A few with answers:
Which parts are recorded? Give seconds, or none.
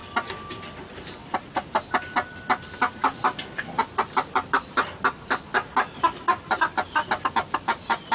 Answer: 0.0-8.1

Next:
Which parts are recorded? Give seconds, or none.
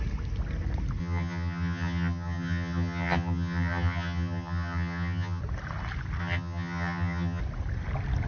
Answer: 0.0-1.0; 5.4-6.2; 7.4-8.3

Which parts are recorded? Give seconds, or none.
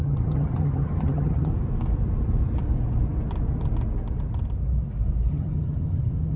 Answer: 1.5-5.3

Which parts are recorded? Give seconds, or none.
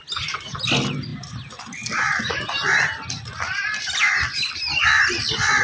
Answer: 0.0-5.6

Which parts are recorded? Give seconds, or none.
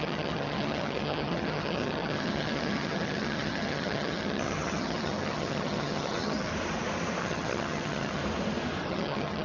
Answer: 6.5-7.2; 8.2-8.9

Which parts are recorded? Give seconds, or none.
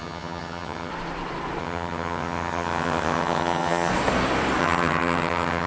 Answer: 0.9-1.6; 3.9-4.6